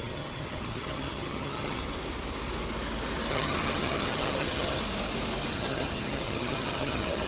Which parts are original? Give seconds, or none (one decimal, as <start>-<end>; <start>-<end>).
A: 1.8-3.3; 4.8-5.4